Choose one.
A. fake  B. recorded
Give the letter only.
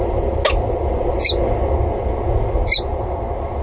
B